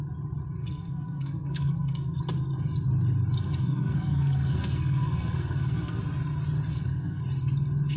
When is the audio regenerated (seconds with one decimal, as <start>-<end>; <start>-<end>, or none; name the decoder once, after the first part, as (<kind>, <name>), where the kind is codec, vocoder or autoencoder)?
0.6-2.2 (codec, SNAC); 3.6-6.0; 6.7-7.2